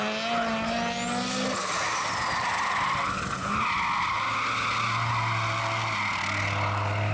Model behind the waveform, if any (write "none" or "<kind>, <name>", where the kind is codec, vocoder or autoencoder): none